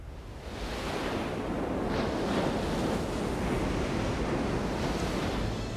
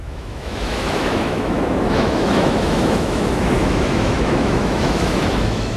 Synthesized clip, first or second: second